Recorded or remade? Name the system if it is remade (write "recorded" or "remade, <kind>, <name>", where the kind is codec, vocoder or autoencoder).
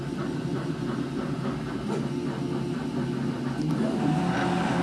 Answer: recorded